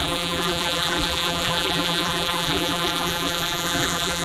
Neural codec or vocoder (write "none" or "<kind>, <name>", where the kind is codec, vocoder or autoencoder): vocoder, BigVGAN v2